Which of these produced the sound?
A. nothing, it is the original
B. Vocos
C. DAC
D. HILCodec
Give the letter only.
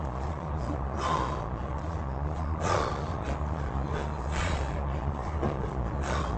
B